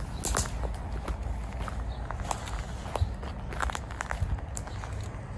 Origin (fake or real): real